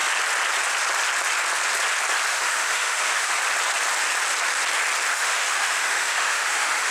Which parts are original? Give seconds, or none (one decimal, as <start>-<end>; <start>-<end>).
0.0-2.3; 3.4-5.1